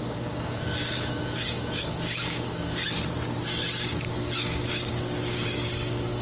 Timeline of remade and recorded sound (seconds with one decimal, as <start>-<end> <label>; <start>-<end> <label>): 0.0-2.8 remade; 2.8-3.4 recorded; 3.4-6.2 remade